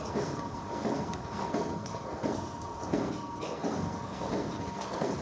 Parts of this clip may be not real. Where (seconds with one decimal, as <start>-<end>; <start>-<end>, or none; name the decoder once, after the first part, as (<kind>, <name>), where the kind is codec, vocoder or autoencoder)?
0.0-5.2 (codec, SNAC)